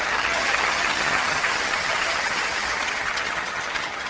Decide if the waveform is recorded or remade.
remade